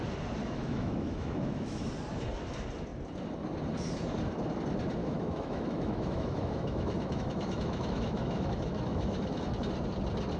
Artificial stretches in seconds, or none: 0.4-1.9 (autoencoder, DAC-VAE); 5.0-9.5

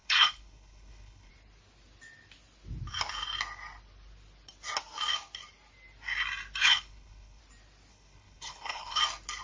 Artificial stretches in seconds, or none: 0.0-1.3 (codec, HILCodec); 6.6-7.4; 7.9-9.0

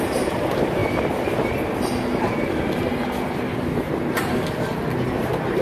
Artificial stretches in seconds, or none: none

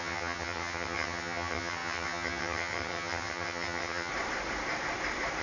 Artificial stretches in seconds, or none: 0.0-4.1 (vocoder, HiFi-GAN)

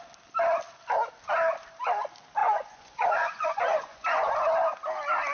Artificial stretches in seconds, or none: 2.4-4.3 (vocoder, Vocos)

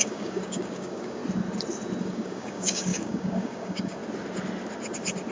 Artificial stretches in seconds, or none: 0.0-1.2 (codec, DAC); 2.0-4.0